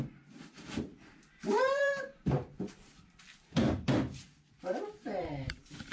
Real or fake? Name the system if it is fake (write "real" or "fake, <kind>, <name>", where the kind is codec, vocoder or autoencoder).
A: fake, vocoder, BigVGAN v2